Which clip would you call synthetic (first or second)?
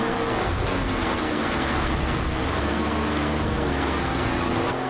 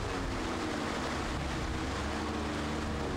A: first